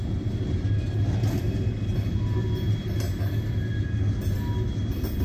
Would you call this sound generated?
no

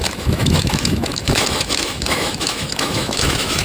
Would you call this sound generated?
yes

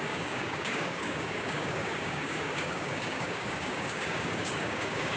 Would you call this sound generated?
yes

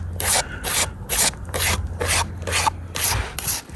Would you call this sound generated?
no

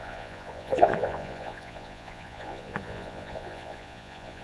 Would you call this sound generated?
yes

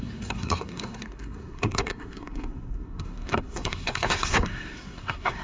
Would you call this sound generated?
yes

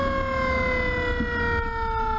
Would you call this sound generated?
no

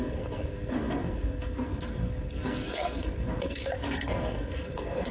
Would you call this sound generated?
yes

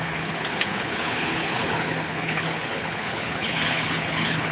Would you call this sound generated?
yes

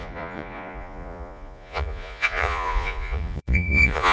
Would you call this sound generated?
yes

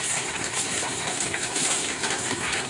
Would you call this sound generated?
yes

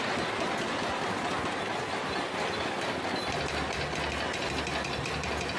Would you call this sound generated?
no